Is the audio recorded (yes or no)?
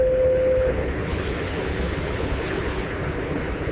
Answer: no